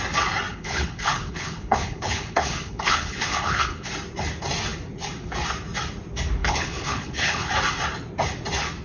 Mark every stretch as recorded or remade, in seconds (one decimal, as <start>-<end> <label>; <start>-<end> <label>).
0.0-0.5 recorded; 0.5-3.9 remade; 3.9-6.4 recorded; 6.4-7.5 remade; 7.5-8.8 recorded

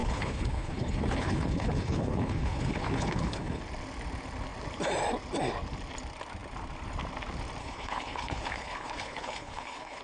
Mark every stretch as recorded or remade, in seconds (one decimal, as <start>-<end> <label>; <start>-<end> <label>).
0.0-3.6 remade; 3.6-7.6 recorded; 7.6-10.0 remade

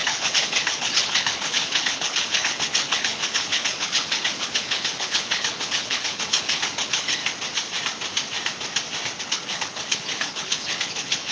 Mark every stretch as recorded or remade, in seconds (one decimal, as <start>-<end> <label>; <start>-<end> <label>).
0.0-7.2 remade; 7.2-9.2 recorded; 9.2-11.3 remade

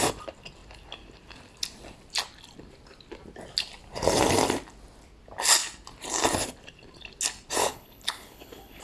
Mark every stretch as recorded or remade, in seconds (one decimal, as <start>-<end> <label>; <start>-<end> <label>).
0.0-7.6 recorded; 7.6-8.8 remade

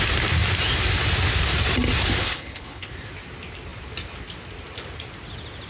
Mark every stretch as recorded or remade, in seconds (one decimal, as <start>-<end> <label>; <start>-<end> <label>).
0.0-2.2 recorded; 2.2-2.9 remade; 2.9-5.7 recorded

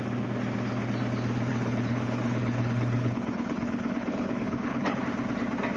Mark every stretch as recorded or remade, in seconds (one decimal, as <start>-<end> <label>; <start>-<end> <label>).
0.0-1.5 recorded; 1.5-5.0 remade; 5.0-5.8 recorded

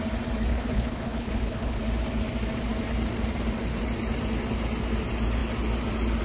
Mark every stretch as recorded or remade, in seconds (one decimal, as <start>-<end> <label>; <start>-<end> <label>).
0.0-0.5 recorded; 0.5-1.8 remade; 1.8-6.2 recorded